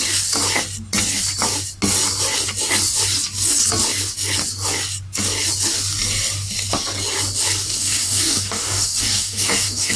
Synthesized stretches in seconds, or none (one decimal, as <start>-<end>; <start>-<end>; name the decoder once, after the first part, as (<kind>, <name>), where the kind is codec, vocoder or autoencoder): 7.7-10.0 (codec, DAC)